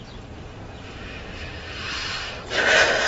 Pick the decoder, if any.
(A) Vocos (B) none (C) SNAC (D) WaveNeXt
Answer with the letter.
B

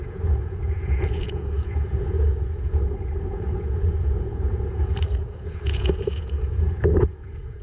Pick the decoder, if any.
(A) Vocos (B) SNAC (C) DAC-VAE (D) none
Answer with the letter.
A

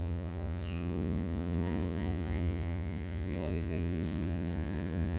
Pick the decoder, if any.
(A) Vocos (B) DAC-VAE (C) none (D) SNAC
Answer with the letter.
A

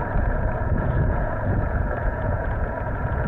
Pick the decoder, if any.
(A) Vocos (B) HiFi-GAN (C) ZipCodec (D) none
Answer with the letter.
A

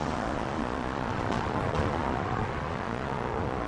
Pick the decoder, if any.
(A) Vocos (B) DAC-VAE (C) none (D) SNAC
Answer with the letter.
A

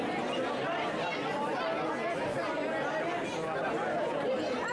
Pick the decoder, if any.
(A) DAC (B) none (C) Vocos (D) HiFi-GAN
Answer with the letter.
B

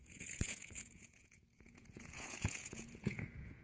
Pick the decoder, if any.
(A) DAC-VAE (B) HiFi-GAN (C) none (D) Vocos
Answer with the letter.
D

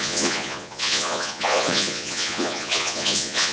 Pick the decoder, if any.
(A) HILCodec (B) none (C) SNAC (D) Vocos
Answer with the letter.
D